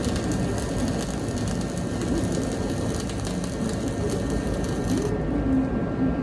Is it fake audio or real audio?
real